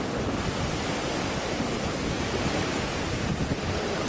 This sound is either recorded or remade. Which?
recorded